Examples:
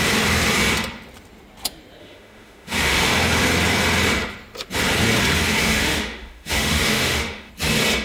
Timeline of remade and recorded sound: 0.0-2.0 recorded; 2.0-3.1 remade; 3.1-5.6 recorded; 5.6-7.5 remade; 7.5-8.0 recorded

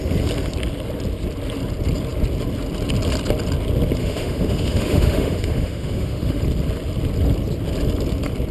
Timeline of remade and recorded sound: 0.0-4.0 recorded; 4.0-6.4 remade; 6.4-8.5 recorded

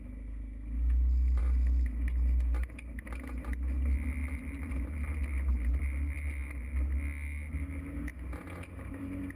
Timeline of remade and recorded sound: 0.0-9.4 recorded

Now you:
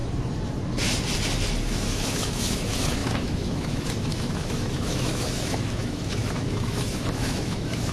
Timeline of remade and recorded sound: 0.0-1.6 recorded; 1.6-7.9 remade

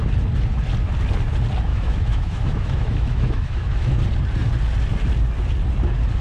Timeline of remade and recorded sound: 0.0-1.7 recorded; 1.7-4.0 remade; 4.0-6.2 recorded